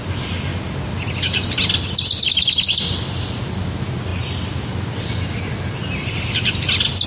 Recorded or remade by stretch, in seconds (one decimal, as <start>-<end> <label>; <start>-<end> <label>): 0.0-7.1 recorded